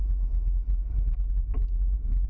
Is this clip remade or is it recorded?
recorded